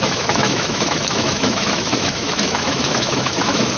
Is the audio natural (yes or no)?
no